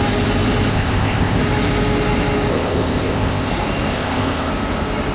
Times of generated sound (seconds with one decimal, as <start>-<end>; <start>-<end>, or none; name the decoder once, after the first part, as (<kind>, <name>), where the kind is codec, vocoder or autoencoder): 0.7-1.4 (codec, ZipCodec); 2.5-3.5; 3.9-4.5